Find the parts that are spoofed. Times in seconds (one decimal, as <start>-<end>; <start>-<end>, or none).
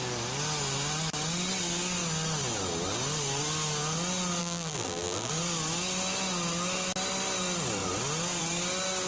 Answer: 4.4-5.3